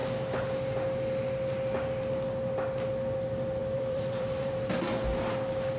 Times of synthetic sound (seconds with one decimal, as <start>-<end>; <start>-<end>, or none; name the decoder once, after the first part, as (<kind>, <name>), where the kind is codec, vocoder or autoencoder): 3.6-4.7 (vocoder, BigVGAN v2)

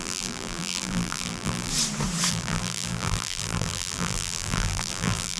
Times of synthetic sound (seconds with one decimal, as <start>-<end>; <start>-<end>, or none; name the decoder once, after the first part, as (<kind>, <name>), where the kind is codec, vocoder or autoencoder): 0.0-1.7 (vocoder, BigVGAN v2); 2.3-5.4

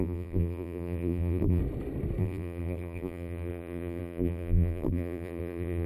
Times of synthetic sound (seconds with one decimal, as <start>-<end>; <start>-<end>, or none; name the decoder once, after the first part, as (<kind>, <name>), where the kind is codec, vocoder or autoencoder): 0.0-1.6 (vocoder, BigVGAN v2); 2.2-5.9

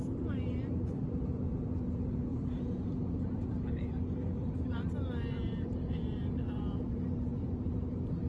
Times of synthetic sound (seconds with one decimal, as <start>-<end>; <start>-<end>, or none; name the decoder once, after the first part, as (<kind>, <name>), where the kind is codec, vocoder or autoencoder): 0.0-8.3 (vocoder, BigVGAN v2)

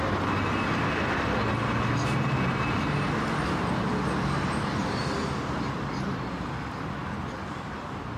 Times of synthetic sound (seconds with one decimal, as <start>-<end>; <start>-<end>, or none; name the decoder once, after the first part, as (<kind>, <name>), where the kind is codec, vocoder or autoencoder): none

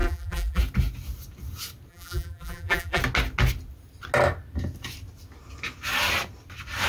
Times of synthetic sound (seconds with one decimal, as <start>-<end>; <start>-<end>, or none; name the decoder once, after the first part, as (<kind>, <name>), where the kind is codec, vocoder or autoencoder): 0.0-0.6 (vocoder, BigVGAN v2); 1.9-3.0